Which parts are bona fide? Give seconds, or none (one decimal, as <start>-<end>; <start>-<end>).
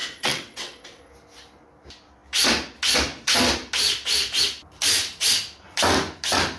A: 1.1-6.6